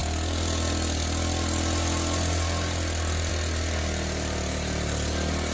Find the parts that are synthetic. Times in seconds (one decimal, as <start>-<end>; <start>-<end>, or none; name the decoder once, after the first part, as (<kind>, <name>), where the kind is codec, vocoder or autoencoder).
none